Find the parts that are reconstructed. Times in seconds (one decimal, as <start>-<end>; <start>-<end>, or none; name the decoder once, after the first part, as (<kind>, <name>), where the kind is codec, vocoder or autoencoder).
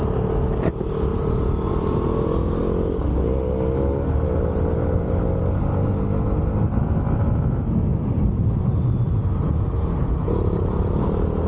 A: 1.1-1.7 (vocoder, BigVGAN v2); 7.9-8.7